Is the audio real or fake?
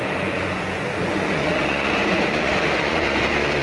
fake